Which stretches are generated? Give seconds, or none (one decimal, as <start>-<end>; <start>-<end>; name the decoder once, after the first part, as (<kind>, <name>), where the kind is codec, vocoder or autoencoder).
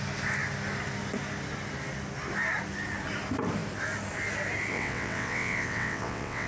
4.7-6.5 (vocoder, WaveNeXt)